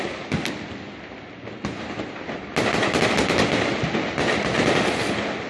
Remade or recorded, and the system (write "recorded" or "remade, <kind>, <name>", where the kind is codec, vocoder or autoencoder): recorded